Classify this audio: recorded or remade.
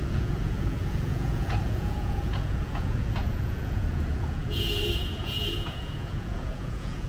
remade